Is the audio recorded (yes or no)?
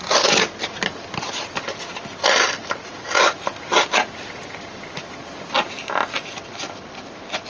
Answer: yes